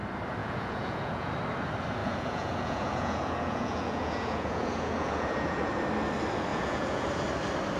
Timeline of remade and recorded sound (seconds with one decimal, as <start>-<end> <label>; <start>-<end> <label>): 0.0-0.4 recorded; 0.4-1.3 remade; 1.3-2.0 recorded; 2.0-5.7 remade; 5.7-6.5 recorded; 6.5-7.1 remade; 7.1-7.8 recorded